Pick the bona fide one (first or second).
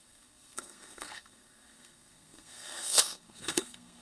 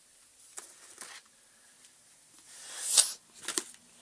second